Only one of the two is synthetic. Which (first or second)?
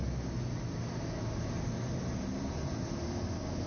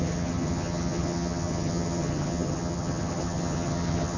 second